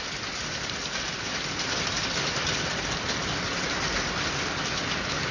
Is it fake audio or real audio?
real